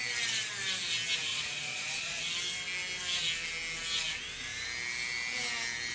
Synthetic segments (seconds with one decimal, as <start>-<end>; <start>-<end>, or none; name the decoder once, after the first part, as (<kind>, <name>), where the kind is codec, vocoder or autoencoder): 1.3-2.2 (vocoder, Vocos)